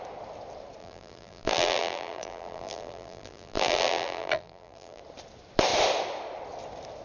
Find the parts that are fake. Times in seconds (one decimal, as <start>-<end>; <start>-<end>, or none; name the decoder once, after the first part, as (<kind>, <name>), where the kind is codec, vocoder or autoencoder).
0.8-5.0 (vocoder, BigVGAN v2)